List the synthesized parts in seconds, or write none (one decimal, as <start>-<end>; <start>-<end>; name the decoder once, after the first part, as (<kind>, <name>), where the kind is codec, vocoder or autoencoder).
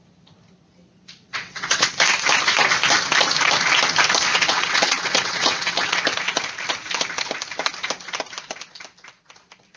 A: 1.3-1.9 (vocoder, WaveNeXt); 4.3-6.0